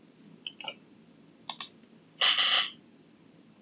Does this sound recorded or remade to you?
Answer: recorded